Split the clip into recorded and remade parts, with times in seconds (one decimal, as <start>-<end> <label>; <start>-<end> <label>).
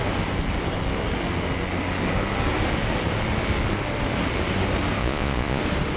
0.0-5.0 recorded; 5.0-5.6 remade; 5.6-6.0 recorded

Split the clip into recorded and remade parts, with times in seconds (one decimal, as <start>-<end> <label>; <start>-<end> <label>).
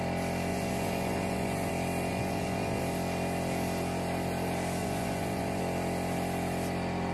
0.0-0.5 recorded; 0.5-1.7 remade; 1.7-2.1 recorded; 2.1-2.8 remade; 2.8-4.8 recorded; 4.8-5.6 remade; 5.6-7.1 recorded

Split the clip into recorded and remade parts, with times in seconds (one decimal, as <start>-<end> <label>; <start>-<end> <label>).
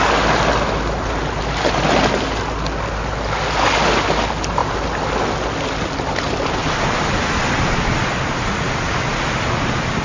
0.0-10.0 recorded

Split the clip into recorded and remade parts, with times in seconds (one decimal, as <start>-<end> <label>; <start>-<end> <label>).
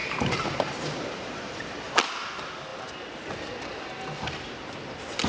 0.0-1.9 remade; 1.9-5.3 recorded